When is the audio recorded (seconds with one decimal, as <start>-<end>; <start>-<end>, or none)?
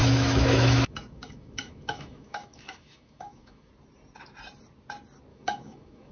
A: 3.7-5.3